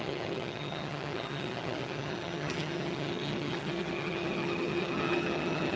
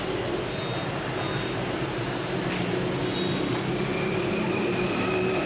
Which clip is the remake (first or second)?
first